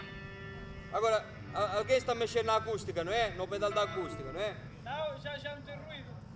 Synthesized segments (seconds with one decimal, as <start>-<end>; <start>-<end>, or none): none